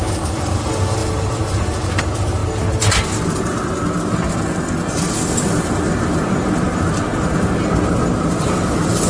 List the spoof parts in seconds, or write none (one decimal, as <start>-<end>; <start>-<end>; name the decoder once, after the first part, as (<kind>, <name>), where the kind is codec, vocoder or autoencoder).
1.0-2.0 (vocoder, BigVGAN v2)